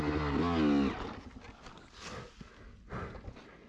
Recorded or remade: recorded